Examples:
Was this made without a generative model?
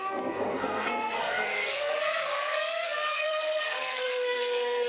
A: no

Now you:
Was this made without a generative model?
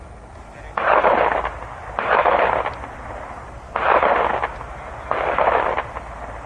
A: yes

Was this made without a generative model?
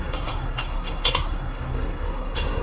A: no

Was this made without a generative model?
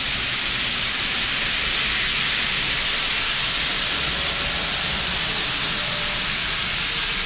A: yes